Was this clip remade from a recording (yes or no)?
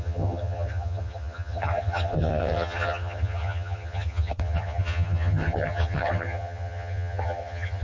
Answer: yes